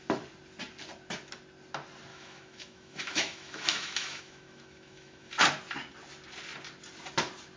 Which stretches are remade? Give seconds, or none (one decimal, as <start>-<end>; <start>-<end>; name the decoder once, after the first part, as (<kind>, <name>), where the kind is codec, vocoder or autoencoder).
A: 2.1-5.3 (autoencoder, DAC-VAE)